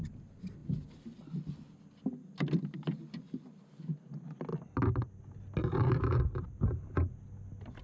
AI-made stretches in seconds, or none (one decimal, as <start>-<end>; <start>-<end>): none